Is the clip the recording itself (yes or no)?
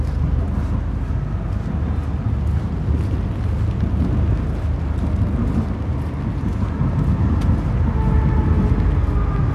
yes